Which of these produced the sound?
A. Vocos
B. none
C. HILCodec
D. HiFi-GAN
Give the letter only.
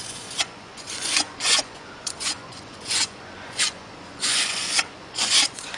A